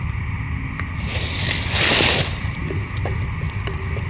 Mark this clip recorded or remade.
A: recorded